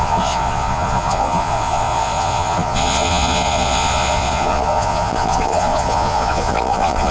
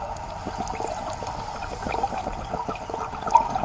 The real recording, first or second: second